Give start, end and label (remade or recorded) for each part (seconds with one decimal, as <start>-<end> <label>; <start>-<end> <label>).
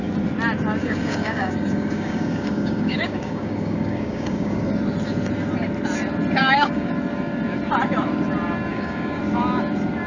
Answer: 0.0-0.8 recorded; 0.8-4.6 remade; 4.6-6.4 recorded; 6.4-6.9 remade; 6.9-8.7 recorded; 8.7-9.2 remade; 9.2-10.1 recorded